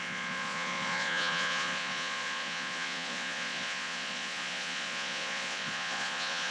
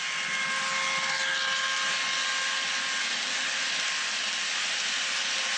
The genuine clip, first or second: second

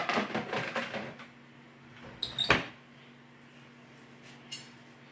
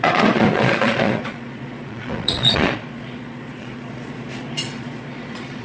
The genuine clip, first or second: first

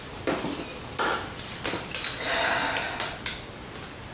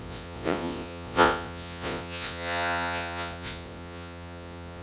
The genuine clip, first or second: first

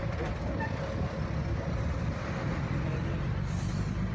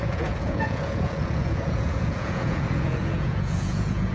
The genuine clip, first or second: first